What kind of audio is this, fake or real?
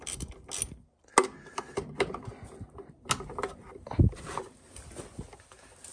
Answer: real